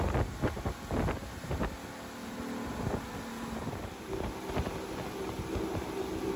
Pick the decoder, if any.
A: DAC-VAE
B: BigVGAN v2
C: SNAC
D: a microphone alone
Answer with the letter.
D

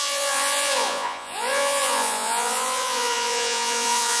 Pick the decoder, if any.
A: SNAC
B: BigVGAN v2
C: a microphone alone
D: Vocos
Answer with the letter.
D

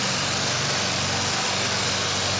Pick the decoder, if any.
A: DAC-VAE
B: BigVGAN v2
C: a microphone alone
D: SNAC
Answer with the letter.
C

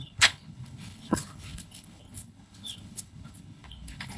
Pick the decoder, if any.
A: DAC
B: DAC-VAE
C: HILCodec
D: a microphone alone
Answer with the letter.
C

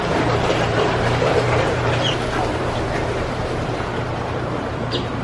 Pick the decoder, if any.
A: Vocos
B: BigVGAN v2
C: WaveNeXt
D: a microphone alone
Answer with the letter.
B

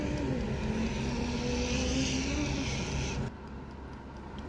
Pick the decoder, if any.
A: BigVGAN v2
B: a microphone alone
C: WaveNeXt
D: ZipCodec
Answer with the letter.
B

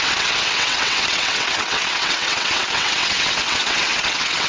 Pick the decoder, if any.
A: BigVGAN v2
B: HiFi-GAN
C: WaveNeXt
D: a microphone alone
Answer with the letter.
C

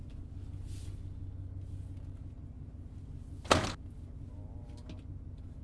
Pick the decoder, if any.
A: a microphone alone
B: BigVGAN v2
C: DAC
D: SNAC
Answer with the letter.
A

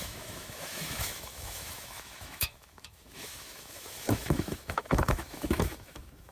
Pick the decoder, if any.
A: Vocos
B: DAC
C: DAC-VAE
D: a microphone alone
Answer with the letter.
C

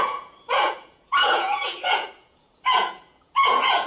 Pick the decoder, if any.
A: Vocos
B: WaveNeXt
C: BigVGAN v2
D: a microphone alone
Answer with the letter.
A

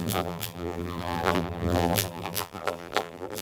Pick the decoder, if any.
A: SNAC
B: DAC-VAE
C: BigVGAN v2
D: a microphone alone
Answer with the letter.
C